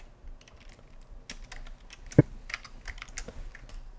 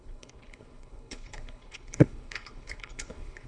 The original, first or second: first